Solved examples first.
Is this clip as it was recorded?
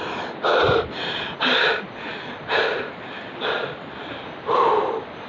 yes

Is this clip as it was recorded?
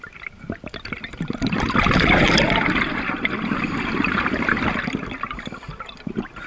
yes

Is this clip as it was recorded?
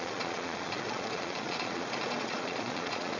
no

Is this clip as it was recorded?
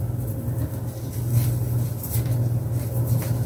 yes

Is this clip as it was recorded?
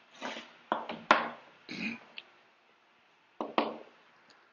yes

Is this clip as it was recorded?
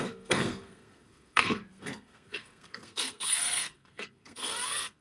no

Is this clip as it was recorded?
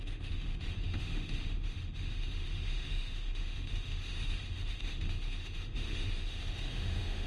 no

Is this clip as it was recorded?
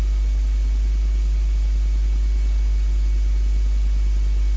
yes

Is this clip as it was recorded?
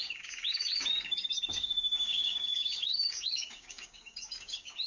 no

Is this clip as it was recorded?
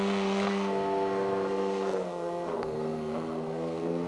no